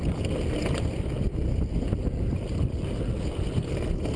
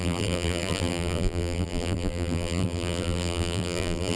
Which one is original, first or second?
first